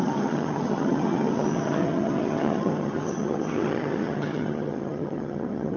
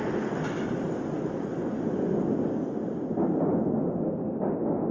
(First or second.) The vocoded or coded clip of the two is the first